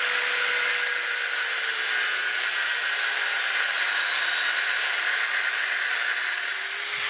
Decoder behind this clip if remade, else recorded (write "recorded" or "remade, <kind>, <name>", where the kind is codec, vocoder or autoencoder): recorded